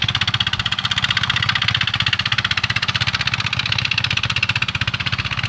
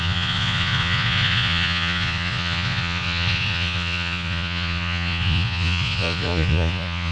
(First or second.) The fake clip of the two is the second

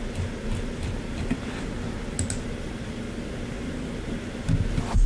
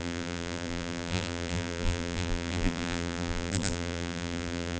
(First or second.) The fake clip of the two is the second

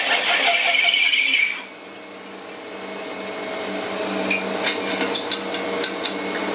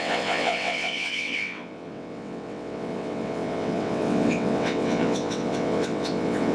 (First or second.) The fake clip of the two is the second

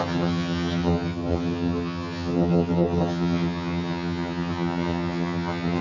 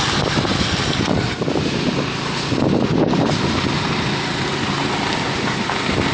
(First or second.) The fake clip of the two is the first